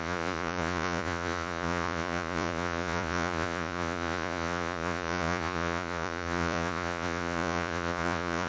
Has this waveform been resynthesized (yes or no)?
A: yes